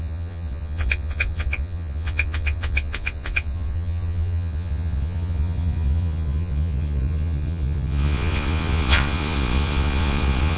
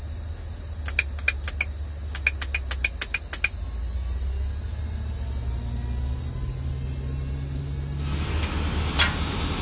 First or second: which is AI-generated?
first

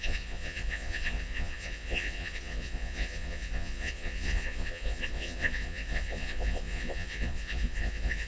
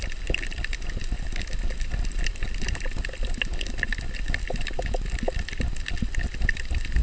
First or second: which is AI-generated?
first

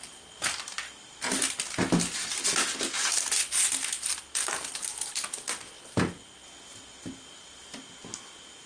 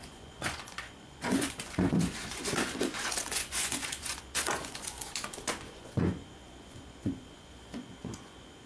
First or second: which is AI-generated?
second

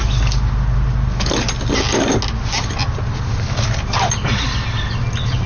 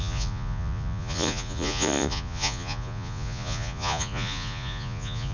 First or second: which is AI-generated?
second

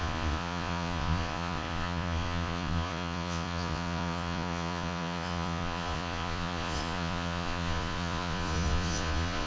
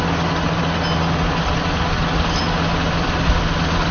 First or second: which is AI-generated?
first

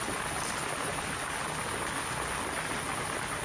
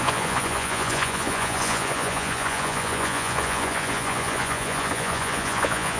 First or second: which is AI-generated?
second